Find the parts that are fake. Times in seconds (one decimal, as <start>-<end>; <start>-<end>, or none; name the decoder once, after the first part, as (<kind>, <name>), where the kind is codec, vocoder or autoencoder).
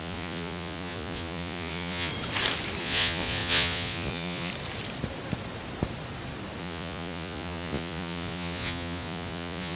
0.0-2.1 (vocoder, Vocos); 2.8-4.5; 6.6-9.8